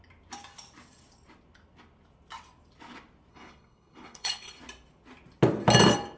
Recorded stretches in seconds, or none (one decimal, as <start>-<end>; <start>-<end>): 0.0-3.3; 4.6-6.2